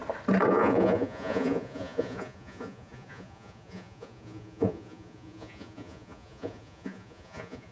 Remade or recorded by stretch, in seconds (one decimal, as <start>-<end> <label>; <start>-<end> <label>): 0.0-0.5 recorded; 0.5-7.7 remade